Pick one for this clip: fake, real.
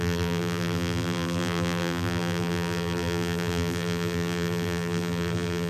fake